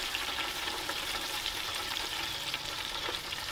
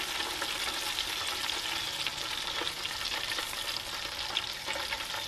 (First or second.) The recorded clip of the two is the second